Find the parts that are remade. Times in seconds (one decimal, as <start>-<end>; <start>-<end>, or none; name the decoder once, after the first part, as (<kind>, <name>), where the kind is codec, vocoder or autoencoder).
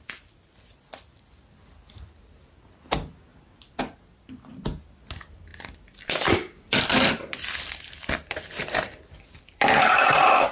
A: 3.3-3.8 (vocoder, BigVGAN v2); 5.5-9.9